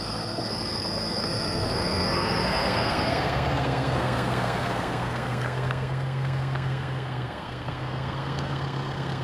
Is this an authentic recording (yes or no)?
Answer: no